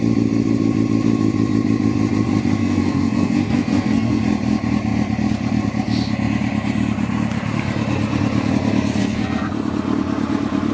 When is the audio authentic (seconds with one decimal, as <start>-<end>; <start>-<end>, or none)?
0.0-2.6; 4.2-9.0; 9.5-10.7